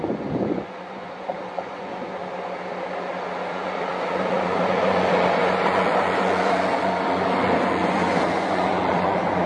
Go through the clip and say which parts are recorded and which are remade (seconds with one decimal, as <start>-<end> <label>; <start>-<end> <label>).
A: 0.0-2.2 remade; 2.2-3.5 recorded; 3.5-9.5 remade